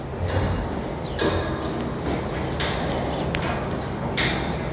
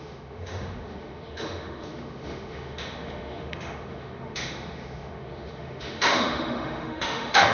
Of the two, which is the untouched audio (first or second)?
first